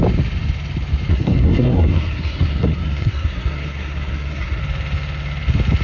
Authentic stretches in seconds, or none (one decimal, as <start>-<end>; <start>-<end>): 0.0-1.1; 4.6-5.8